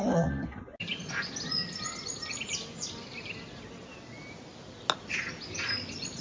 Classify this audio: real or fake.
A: real